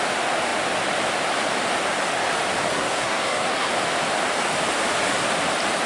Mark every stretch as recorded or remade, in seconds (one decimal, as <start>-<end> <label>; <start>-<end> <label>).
0.0-2.7 recorded; 2.7-3.7 remade; 3.7-5.9 recorded